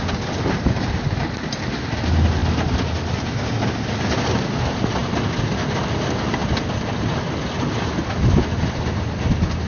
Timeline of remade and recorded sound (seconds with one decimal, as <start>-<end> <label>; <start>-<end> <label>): 0.0-9.7 recorded

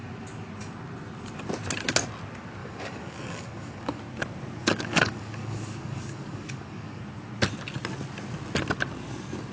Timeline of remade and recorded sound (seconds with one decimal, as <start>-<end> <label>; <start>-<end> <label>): 0.0-2.6 recorded; 2.6-4.0 remade; 4.0-4.6 recorded; 4.6-7.0 remade; 7.0-9.5 recorded

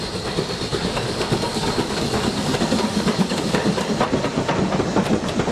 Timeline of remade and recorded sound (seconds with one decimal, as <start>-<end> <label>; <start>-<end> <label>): 0.0-0.7 recorded; 0.7-4.0 remade; 4.0-5.5 recorded